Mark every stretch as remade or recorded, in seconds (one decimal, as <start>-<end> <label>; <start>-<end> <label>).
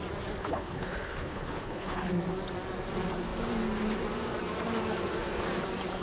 0.0-0.4 recorded; 0.4-2.1 remade; 2.1-6.0 recorded